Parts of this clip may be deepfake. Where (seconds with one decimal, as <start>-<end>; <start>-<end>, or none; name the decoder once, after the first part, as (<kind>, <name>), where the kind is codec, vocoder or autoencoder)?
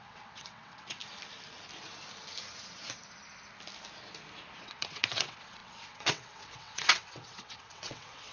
0.0-1.0 (vocoder, WaveNeXt); 4.6-8.3